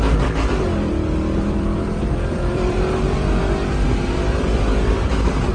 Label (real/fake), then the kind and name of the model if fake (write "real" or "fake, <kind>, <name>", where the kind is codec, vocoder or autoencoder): fake, vocoder, BigVGAN v2